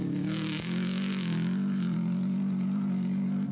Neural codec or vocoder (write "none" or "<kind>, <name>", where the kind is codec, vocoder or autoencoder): none